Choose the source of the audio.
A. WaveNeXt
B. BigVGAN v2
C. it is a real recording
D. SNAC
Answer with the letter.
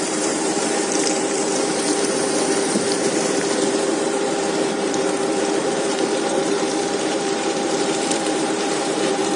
B